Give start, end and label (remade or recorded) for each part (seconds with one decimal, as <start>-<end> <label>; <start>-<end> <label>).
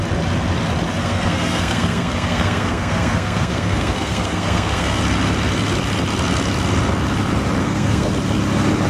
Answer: 0.0-1.0 recorded; 1.0-5.0 remade; 5.0-7.6 recorded; 7.6-8.1 remade; 8.1-8.9 recorded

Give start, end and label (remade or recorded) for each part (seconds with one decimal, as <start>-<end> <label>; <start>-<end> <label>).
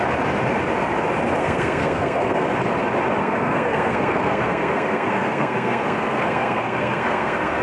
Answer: 0.0-1.4 recorded; 1.4-2.5 remade; 2.5-3.2 recorded; 3.2-7.6 remade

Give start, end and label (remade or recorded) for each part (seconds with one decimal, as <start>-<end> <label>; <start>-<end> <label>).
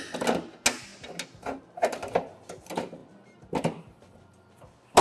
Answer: 0.0-5.0 recorded